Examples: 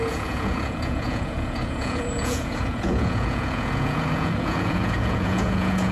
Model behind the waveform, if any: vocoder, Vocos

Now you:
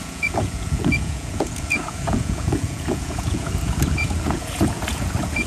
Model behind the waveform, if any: vocoder, Vocos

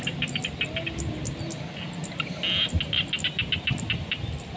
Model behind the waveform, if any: none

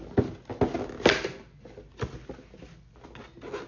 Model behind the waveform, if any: none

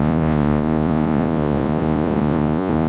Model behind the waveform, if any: vocoder, Vocos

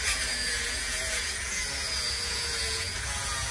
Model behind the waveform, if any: vocoder, Vocos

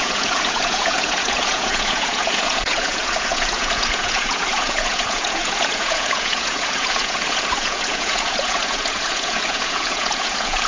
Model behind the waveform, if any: vocoder, Vocos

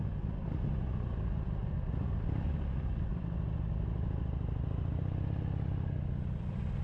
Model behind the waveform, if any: none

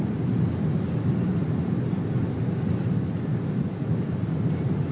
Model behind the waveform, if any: none